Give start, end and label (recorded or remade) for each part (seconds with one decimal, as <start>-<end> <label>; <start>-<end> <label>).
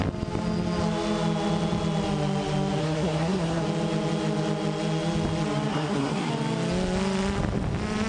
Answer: 0.0-2.8 recorded; 2.8-3.6 remade; 3.6-5.7 recorded; 5.7-6.3 remade; 6.3-8.1 recorded